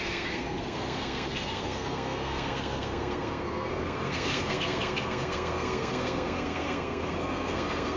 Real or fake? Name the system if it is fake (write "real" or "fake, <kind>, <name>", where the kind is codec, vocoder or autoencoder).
fake, codec, SNAC